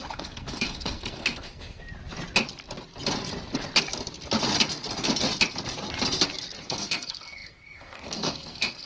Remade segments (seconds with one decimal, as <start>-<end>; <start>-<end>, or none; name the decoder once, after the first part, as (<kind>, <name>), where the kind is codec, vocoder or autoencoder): 0.0-1.8 (codec, SNAC); 6.6-8.9